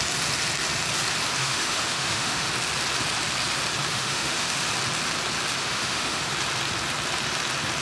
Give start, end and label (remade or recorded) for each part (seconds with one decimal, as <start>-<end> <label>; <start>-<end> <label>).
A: 0.0-1.4 recorded; 1.4-2.5 remade; 2.5-3.9 recorded; 3.9-4.6 remade; 4.6-5.6 recorded; 5.6-6.3 remade; 6.3-7.8 recorded

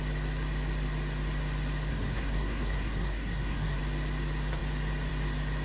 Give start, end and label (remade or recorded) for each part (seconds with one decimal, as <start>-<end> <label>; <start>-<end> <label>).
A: 0.0-1.9 recorded; 1.9-3.8 remade; 3.8-5.6 recorded

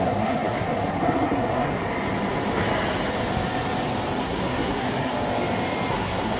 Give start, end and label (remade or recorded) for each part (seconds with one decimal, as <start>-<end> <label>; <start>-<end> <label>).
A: 0.0-1.8 remade; 1.8-4.2 recorded; 4.2-5.1 remade; 5.1-5.9 recorded; 5.9-6.4 remade

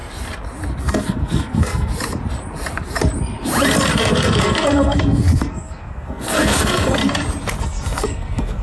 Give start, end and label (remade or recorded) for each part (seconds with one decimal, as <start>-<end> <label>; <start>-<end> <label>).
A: 0.0-0.8 recorded; 0.8-1.9 remade; 1.9-4.0 recorded; 4.0-7.0 remade; 7.0-7.6 recorded; 7.6-8.6 remade

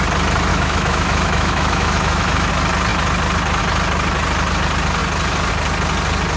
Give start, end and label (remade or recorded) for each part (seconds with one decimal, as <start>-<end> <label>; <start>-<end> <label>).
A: 0.0-0.5 recorded; 0.5-2.5 remade; 2.5-6.4 recorded

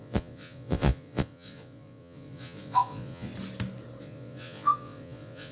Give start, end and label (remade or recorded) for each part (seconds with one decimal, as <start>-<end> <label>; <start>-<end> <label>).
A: 0.0-3.3 remade; 3.3-4.0 recorded; 4.0-5.5 remade

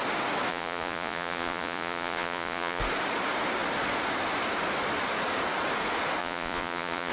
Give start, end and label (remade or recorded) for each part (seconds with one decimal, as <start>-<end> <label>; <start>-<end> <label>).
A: 0.0-0.5 recorded; 0.5-2.8 remade; 2.8-6.2 recorded; 6.2-7.1 remade

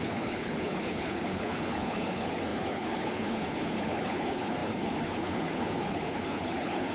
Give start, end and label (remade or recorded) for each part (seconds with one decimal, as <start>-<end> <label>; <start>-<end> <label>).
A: 0.0-6.9 remade